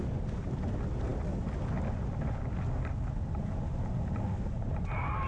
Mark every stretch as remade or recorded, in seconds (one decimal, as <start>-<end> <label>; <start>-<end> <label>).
0.0-5.3 recorded